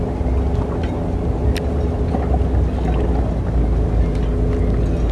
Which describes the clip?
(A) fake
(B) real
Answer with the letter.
B